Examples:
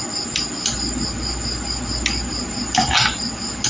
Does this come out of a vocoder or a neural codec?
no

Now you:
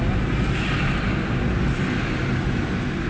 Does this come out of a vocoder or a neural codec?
no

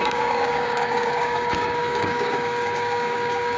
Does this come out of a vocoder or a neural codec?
yes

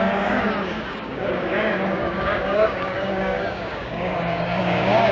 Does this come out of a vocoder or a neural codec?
yes